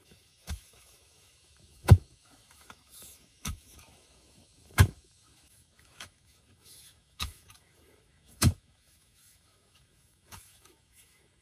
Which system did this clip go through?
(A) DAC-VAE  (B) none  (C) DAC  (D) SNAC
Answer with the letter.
A